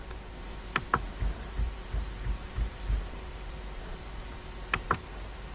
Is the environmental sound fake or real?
fake